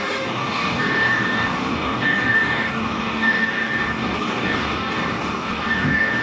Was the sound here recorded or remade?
remade